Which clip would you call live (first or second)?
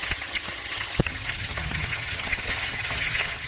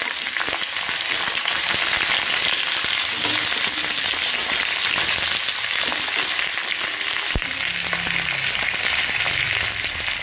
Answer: second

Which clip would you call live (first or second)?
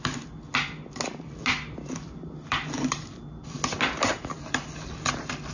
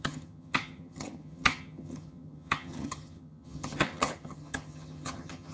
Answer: first